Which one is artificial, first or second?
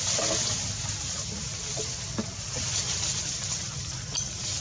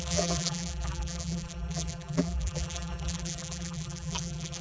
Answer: second